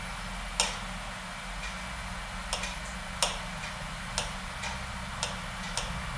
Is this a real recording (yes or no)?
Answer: yes